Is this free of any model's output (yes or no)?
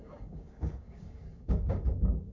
no